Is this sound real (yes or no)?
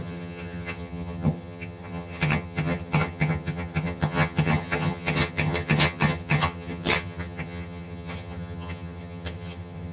no